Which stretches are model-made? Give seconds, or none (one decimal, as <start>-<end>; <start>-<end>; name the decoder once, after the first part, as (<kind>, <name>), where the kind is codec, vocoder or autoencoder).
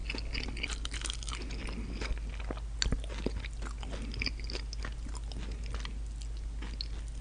none